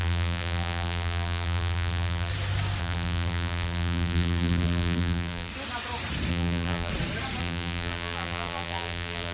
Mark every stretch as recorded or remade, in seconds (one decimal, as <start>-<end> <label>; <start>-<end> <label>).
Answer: 0.0-2.3 remade; 2.3-2.8 recorded; 2.8-5.5 remade; 5.5-6.3 recorded; 6.3-6.9 remade; 6.9-7.4 recorded; 7.4-9.3 remade